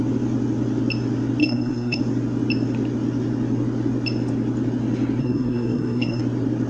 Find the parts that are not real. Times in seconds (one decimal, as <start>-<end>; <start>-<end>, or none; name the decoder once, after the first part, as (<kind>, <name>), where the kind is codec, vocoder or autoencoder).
1.4-2.0 (codec, SNAC); 5.2-6.2